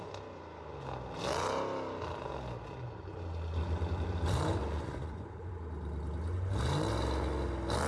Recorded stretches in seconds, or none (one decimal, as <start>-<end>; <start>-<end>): 0.0-4.6; 5.5-7.9